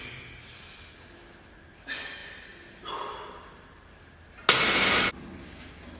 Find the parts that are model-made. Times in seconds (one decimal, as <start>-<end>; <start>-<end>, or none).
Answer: none